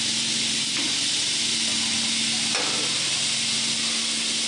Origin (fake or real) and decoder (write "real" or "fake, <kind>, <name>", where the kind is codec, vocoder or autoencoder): real